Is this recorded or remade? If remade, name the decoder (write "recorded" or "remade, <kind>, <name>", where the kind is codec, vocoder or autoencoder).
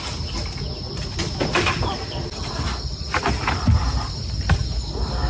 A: recorded